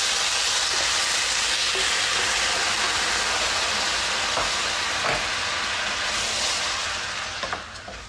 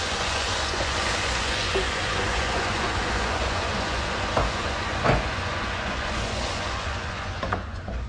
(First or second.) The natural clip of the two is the first